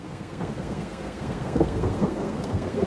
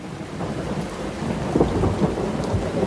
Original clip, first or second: second